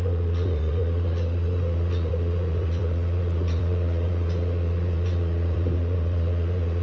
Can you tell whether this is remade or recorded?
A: remade